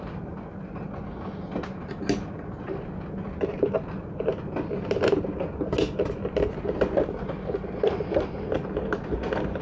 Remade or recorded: recorded